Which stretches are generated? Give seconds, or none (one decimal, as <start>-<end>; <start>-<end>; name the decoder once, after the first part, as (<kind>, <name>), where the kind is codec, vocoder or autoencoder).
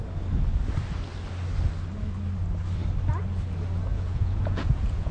3.9-5.1 (vocoder, Vocos)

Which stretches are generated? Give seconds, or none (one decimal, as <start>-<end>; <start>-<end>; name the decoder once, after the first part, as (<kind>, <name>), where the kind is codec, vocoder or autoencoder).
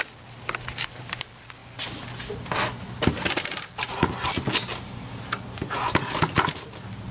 none